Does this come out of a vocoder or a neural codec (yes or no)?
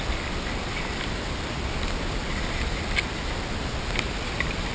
no